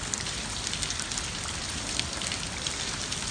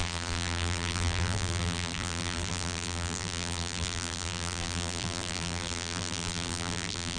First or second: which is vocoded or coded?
second